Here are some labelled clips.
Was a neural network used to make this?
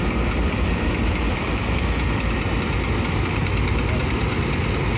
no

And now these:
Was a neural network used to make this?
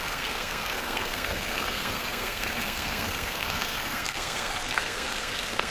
yes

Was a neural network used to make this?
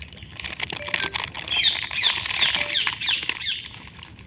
no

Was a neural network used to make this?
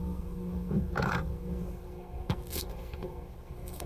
yes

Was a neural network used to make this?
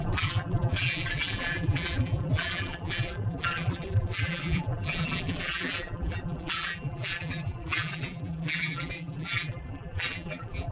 yes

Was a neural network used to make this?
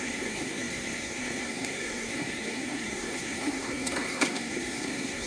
yes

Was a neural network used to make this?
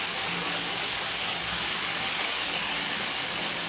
yes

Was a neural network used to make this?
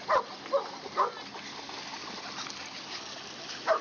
no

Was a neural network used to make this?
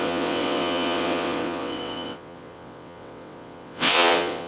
yes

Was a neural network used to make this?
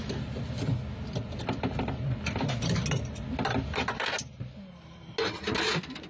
no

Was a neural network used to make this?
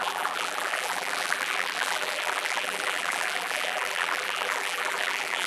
yes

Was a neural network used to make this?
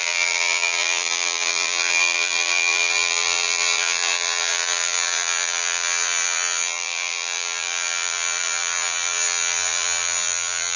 yes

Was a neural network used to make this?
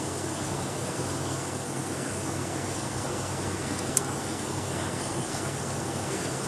yes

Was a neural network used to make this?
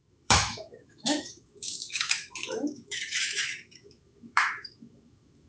yes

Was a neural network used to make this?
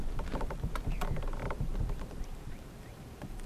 yes